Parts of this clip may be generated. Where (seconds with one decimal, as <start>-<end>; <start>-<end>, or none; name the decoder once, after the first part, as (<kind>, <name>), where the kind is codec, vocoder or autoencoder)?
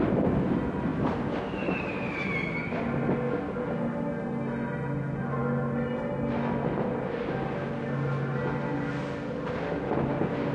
none